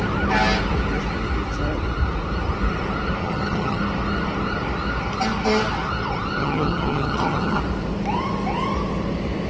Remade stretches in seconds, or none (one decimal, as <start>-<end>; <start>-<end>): 3.2-3.8; 6.4-7.6